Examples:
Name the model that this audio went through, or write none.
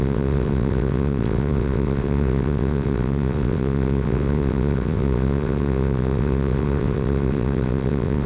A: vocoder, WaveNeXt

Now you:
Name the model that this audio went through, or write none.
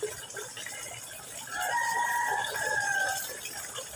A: none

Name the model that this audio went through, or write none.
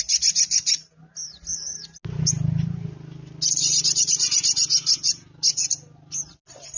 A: none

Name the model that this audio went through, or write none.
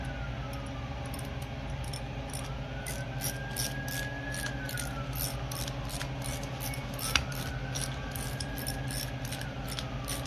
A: none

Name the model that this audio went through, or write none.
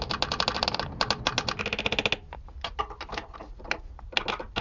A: none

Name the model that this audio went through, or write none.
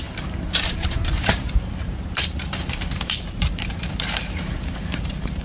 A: vocoder, BigVGAN v2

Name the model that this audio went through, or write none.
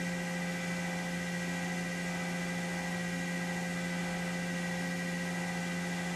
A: none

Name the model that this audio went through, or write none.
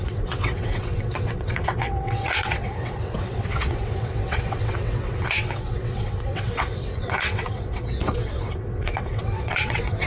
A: vocoder, WaveNeXt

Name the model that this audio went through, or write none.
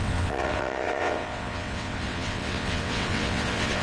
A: vocoder, WaveNeXt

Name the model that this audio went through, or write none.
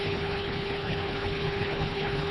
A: codec, HILCodec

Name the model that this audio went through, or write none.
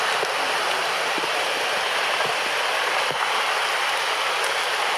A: none